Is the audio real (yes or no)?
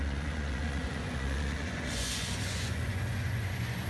no